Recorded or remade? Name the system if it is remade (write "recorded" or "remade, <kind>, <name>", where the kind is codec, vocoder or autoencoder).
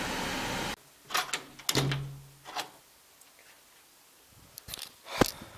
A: recorded